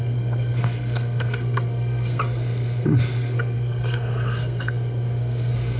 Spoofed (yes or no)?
yes